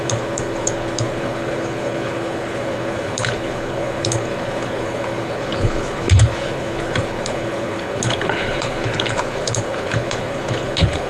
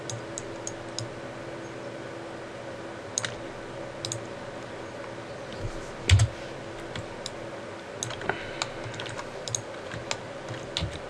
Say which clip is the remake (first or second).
first